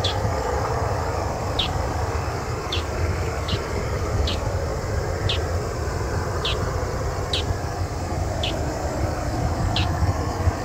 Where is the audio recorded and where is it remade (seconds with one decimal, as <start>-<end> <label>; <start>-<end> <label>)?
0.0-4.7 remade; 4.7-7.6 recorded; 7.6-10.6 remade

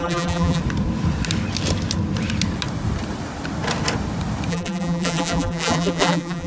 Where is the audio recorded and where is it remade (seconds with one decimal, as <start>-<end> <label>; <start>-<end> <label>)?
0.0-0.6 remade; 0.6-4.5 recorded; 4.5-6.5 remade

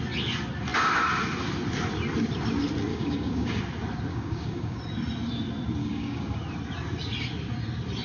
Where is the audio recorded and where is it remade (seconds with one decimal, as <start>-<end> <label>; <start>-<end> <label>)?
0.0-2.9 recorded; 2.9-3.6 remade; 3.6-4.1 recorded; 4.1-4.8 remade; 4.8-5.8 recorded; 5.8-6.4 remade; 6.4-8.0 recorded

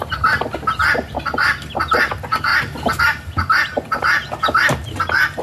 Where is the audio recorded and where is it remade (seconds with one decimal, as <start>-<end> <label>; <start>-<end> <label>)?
0.0-2.5 remade; 2.5-3.0 recorded; 3.0-5.4 remade

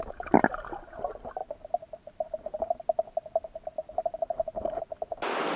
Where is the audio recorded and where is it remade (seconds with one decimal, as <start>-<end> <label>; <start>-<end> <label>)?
0.0-5.6 recorded